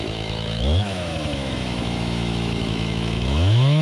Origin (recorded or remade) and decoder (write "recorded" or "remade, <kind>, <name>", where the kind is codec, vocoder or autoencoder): remade, autoencoder, DAC-VAE